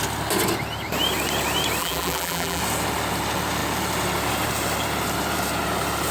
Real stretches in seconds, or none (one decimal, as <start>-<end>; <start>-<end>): 0.0-1.8; 2.6-6.1